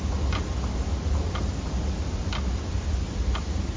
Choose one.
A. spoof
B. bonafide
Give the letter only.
B